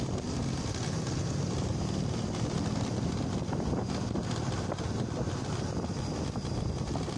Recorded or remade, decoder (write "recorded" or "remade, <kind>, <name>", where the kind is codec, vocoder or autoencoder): recorded